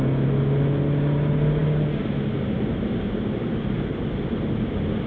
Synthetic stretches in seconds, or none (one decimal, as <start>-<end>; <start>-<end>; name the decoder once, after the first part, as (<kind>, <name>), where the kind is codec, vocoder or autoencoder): none